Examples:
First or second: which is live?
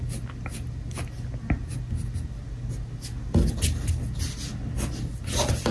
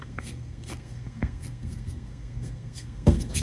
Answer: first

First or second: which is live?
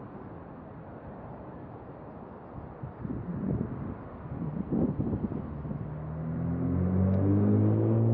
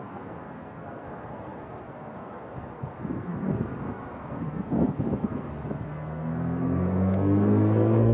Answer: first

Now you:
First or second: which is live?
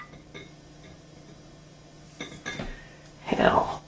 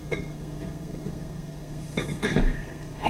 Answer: first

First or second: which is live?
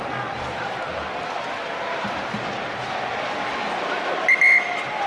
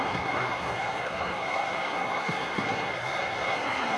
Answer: first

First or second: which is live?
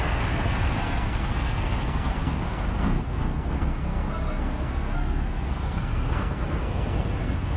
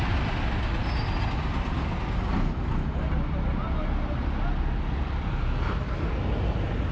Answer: second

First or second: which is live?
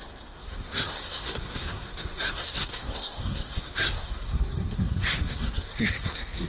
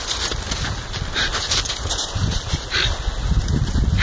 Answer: second